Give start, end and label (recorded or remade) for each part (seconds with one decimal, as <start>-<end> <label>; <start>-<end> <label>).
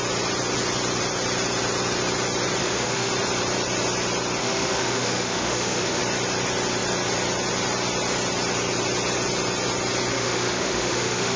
0.0-2.6 recorded; 2.6-3.1 remade; 3.1-4.4 recorded; 4.4-6.0 remade; 6.0-10.1 recorded; 10.1-11.4 remade